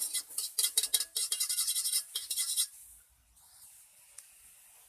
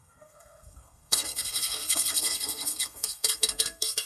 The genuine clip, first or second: first